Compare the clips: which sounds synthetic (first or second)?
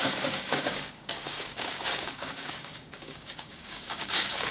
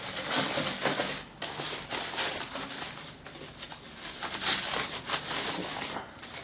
first